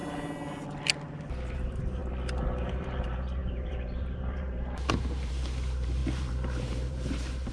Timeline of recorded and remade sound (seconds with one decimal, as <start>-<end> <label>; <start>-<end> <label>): 0.0-1.5 recorded; 1.5-2.0 remade; 2.0-2.6 recorded; 2.6-7.5 remade

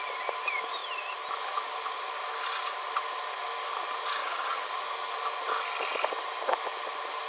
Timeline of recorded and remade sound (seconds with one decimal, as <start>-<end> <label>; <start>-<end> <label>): 0.0-4.2 recorded; 4.2-4.7 remade; 4.7-7.3 recorded

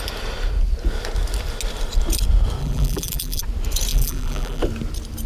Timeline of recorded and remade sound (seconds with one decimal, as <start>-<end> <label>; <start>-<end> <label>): 0.0-2.6 recorded; 2.6-3.4 remade; 3.4-3.9 recorded; 3.9-4.6 remade; 4.6-5.3 recorded

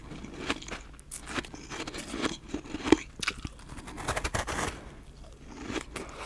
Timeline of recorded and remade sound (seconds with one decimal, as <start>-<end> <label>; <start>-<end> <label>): 0.0-6.3 recorded

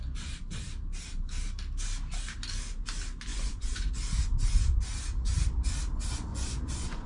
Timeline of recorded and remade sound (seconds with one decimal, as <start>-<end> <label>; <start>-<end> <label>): 0.0-3.3 recorded; 3.3-3.9 remade; 3.9-6.3 recorded; 6.3-7.1 remade

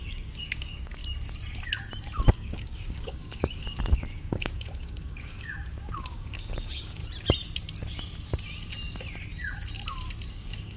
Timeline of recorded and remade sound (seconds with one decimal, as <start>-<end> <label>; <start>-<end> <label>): 0.0-1.0 remade; 1.0-2.3 recorded; 2.3-7.0 remade; 7.0-10.3 recorded; 10.3-10.8 remade

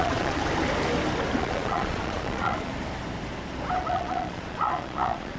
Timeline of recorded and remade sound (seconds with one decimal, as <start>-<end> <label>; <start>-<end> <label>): 0.0-0.4 remade; 0.4-1.4 recorded; 1.4-2.7 remade; 2.7-3.8 recorded; 3.8-5.4 remade

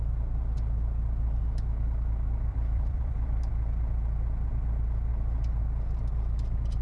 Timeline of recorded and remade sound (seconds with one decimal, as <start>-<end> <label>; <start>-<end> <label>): 0.0-2.5 recorded; 2.5-3.5 remade; 3.5-6.8 recorded